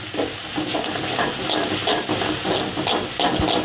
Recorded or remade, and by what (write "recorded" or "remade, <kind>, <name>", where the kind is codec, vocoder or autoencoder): recorded